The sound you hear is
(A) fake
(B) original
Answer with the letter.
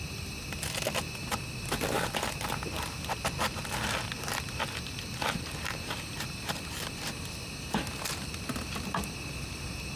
B